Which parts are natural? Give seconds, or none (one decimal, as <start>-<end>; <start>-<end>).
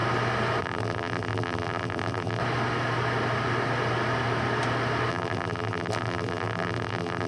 0.0-0.6; 2.4-5.1